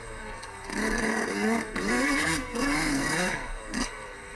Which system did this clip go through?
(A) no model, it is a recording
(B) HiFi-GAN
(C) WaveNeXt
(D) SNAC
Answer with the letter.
D